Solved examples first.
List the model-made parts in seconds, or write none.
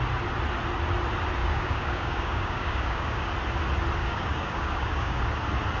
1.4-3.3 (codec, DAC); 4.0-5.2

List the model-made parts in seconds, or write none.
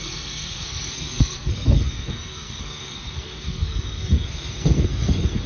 0.0-5.5 (codec, SNAC)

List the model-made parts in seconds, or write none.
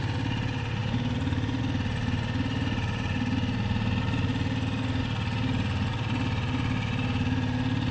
0.8-1.6 (vocoder, BigVGAN v2)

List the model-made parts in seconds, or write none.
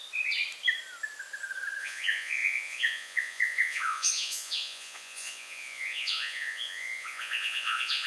1.8-8.1 (vocoder, Vocos)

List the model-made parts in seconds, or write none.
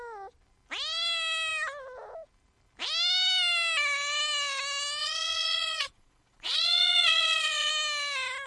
5.0-7.7 (vocoder, Vocos)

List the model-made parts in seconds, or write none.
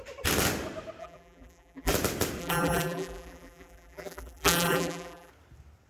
1.0-1.9 (vocoder, BigVGAN v2); 2.4-5.3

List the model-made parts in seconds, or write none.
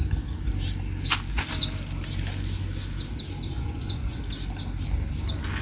3.5-4.2 (vocoder, Vocos)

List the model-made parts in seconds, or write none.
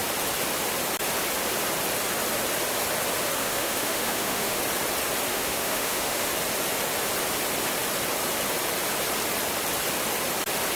3.4-4.6 (autoencoder, DAC-VAE); 5.3-6.3